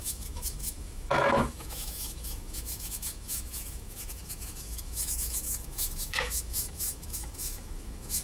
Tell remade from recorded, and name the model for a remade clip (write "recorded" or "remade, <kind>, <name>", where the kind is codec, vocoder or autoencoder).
remade, autoencoder, DAC-VAE